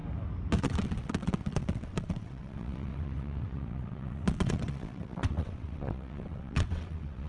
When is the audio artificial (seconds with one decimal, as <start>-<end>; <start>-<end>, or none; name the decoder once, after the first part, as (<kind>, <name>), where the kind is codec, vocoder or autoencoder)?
0.6-7.3 (vocoder, WaveNeXt)